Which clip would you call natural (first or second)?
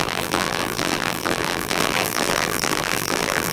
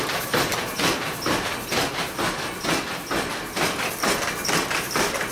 second